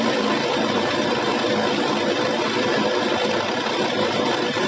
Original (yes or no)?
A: no